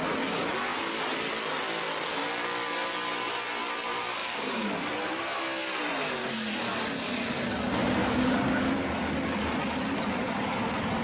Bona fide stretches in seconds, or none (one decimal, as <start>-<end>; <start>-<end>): 0.0-4.2; 4.7-8.0; 8.7-11.0